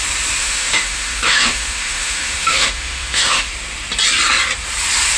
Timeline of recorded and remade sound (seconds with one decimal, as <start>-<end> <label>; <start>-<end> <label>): 0.0-0.4 recorded; 0.4-3.5 remade; 3.5-5.2 recorded